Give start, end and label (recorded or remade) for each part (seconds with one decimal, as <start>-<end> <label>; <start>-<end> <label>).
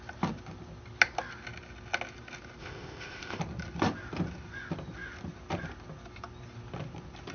0.0-2.6 recorded; 2.6-3.4 remade; 3.4-7.3 recorded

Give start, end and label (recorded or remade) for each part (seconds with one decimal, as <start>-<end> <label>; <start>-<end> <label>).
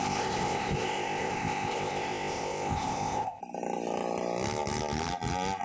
0.0-3.4 remade; 3.4-5.6 recorded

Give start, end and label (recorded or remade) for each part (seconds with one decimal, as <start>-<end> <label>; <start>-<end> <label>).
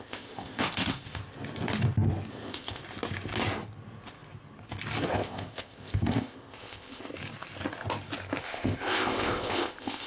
0.0-1.2 remade; 1.2-2.3 recorded; 2.3-2.8 remade; 2.8-5.1 recorded; 5.1-7.1 remade; 7.1-8.4 recorded; 8.4-10.1 remade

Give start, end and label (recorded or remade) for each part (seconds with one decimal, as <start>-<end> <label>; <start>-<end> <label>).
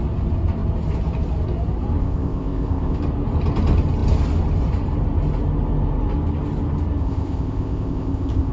0.0-2.0 recorded; 2.0-3.0 remade; 3.0-7.0 recorded; 7.0-8.5 remade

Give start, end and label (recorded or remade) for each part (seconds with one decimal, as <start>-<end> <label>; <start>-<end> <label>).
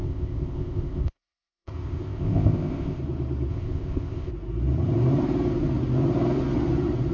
0.0-3.0 remade; 3.0-3.5 recorded; 3.5-4.3 remade; 4.3-7.1 recorded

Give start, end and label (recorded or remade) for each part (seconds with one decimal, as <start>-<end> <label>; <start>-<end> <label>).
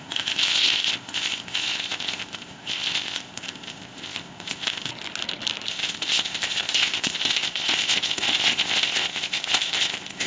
0.0-4.9 remade; 4.9-5.7 recorded; 5.7-10.3 remade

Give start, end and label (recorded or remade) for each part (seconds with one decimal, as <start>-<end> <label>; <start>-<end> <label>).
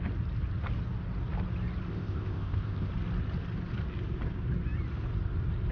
0.0-1.9 recorded; 1.9-2.9 remade; 2.9-5.7 recorded